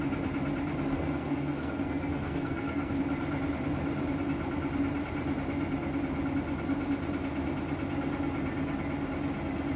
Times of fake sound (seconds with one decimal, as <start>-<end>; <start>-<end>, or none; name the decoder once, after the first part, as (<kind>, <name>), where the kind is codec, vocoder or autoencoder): 0.9-3.0 (codec, SNAC)